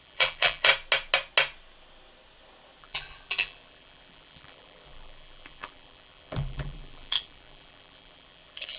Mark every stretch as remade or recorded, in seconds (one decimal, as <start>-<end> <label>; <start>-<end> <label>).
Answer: 0.0-0.7 remade; 0.7-2.8 recorded; 2.8-8.8 remade